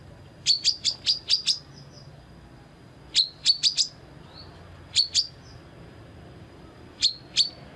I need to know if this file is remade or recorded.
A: recorded